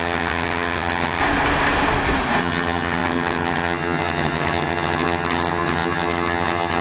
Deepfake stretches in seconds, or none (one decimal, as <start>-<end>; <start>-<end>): 0.0-1.2; 2.4-6.8